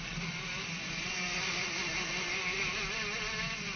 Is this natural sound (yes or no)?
yes